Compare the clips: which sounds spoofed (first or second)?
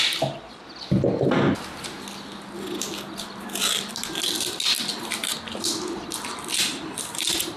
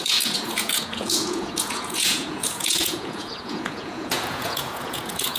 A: second